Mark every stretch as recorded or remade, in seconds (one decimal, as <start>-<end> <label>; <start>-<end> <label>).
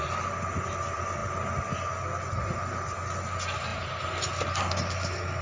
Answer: 0.0-5.4 recorded